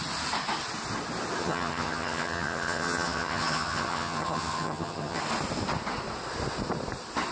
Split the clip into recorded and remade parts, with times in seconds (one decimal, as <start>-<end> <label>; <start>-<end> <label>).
0.0-1.4 recorded; 1.4-5.2 remade; 5.2-7.3 recorded